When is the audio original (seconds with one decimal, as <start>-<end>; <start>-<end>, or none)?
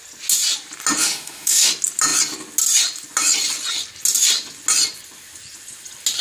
0.0-1.0; 1.7-6.2